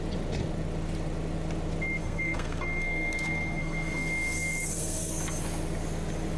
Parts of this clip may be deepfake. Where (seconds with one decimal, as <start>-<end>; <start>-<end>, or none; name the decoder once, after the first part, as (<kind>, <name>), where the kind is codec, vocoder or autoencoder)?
2.0-5.1 (codec, SNAC)